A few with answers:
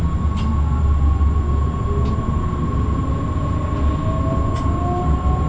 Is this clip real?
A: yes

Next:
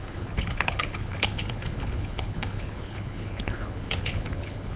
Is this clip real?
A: no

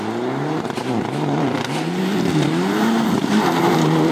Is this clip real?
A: yes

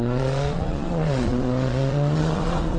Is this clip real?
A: no